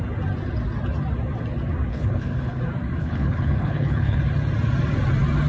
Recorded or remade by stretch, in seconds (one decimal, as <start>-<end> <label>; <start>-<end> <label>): 0.0-1.9 recorded; 1.9-2.6 remade; 2.6-3.0 recorded; 3.0-4.2 remade; 4.2-5.5 recorded